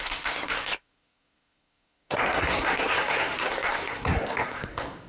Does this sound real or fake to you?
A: fake